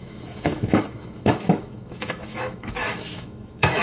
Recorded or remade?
remade